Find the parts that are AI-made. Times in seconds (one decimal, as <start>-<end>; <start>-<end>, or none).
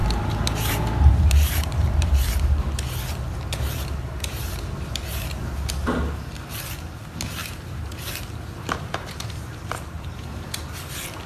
0.0-2.2; 7.4-10.6